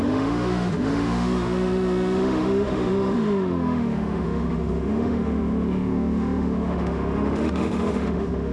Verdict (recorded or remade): remade